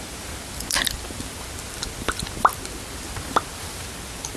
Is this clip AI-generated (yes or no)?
no